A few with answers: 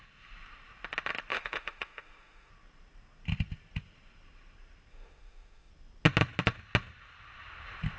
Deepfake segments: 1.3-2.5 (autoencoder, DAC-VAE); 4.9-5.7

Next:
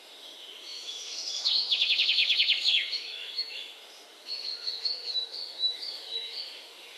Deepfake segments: 0.0-7.0 (autoencoder, DAC-VAE)

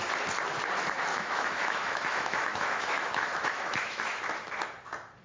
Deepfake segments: 1.1-4.2 (autoencoder, DAC-VAE)

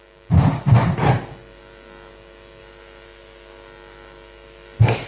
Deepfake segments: 2.6-5.1 (autoencoder, DAC-VAE)